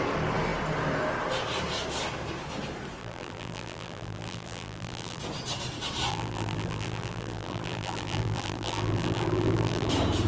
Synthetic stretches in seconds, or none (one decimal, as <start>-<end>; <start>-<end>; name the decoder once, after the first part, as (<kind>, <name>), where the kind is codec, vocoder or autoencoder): 3.0-5.2 (vocoder, BigVGAN v2); 6.1-9.9